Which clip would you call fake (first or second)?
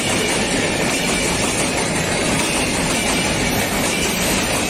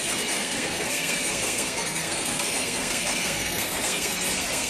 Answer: second